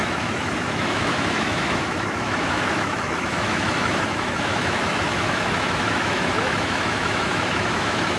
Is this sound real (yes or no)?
no